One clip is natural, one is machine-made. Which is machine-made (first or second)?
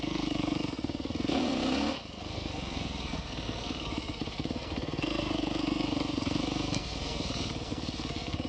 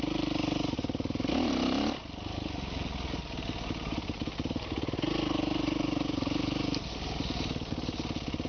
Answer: first